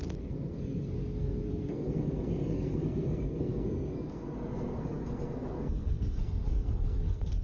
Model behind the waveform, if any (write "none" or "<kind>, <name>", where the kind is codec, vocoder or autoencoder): codec, SNAC